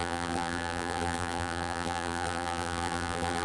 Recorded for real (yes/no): no